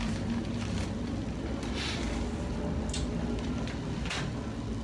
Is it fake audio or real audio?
real